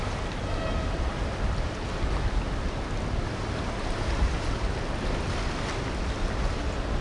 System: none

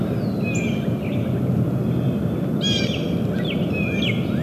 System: none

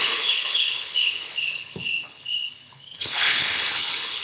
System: codec, HILCodec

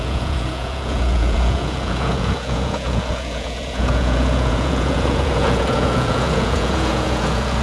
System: vocoder, Vocos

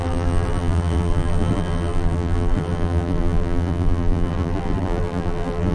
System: vocoder, BigVGAN v2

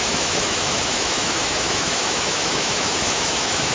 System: autoencoder, DAC-VAE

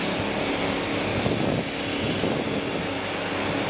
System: none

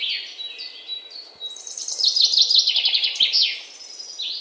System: none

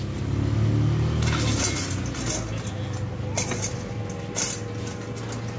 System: none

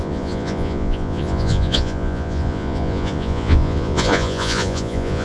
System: vocoder, Vocos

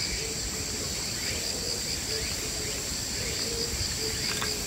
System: none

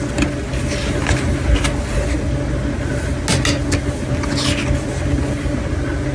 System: none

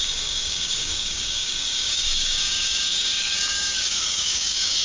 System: codec, DAC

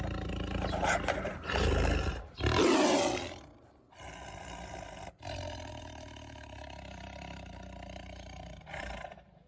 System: none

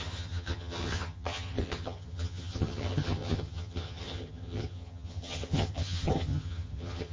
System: vocoder, HiFi-GAN